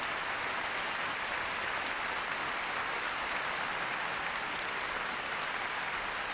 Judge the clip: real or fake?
real